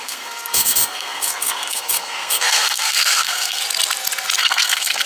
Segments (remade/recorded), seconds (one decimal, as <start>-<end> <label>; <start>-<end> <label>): 0.0-3.6 remade; 3.6-4.4 recorded; 4.4-5.1 remade

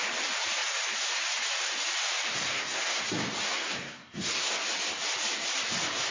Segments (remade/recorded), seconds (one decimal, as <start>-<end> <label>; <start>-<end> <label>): 0.0-2.4 recorded; 2.4-3.0 remade; 3.0-3.5 recorded; 3.5-4.5 remade; 4.5-6.1 recorded

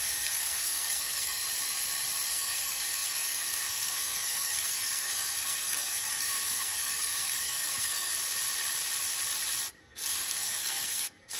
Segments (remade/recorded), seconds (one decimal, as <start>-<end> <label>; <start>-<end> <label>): 0.0-1.4 remade; 1.4-2.3 recorded; 2.3-8.1 remade; 8.1-9.8 recorded; 9.8-11.4 remade

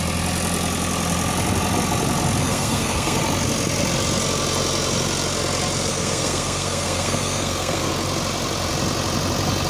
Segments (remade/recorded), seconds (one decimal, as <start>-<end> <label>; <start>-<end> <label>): 0.0-2.4 recorded; 2.4-3.2 remade; 3.2-5.9 recorded; 5.9-7.9 remade; 7.9-9.7 recorded